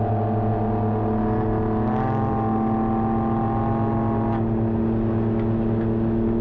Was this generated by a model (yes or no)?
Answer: no